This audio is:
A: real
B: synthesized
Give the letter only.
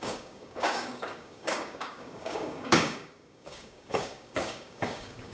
B